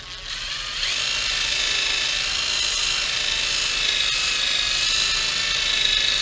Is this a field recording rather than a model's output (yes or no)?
yes